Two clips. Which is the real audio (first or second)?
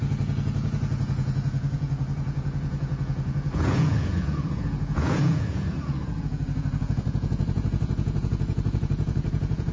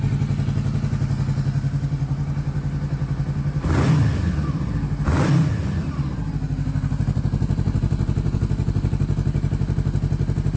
second